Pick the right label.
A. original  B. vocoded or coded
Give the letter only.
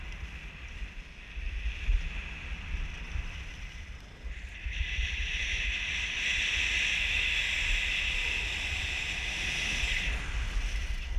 A